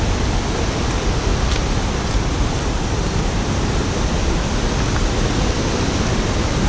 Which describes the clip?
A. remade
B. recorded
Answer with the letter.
B